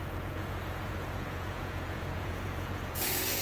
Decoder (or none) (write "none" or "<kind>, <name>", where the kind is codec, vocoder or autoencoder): vocoder, Vocos